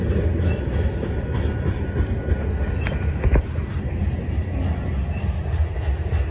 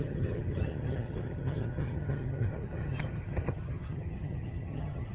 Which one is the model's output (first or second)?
second